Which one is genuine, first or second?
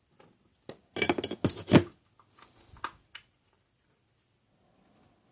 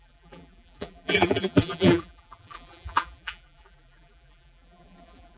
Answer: first